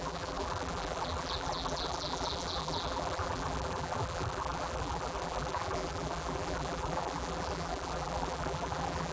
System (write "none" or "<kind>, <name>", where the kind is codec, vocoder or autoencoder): vocoder, BigVGAN v2